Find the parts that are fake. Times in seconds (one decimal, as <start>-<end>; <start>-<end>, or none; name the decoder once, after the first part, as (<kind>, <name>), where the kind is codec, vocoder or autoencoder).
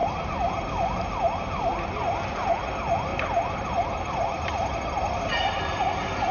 0.0-0.5 (vocoder, BigVGAN v2); 3.1-4.3